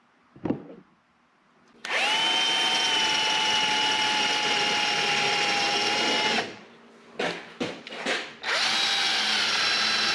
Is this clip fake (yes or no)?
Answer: no